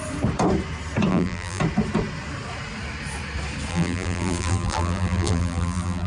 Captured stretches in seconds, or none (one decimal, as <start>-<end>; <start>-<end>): 0.0-1.1; 1.6-3.7